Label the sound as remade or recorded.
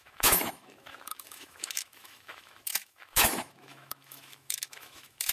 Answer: remade